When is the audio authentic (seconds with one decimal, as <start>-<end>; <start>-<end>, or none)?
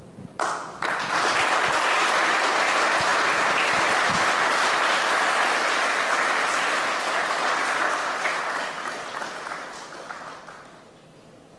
0.0-11.6